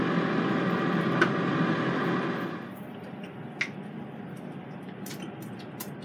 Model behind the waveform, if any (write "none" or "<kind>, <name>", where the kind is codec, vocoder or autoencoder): none